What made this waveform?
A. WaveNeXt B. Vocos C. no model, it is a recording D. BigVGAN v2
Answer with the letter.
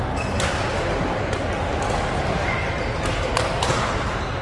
C